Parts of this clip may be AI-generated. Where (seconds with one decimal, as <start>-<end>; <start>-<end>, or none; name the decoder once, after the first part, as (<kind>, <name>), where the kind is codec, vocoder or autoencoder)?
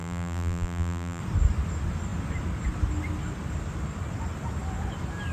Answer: 0.0-1.2 (vocoder, BigVGAN v2)